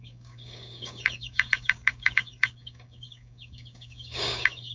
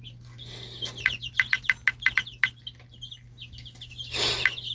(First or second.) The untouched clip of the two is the second